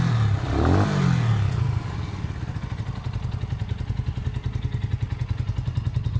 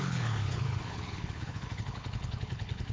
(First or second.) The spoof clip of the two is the second